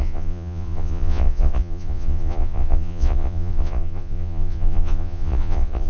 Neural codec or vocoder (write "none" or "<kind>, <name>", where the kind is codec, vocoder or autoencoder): vocoder, Vocos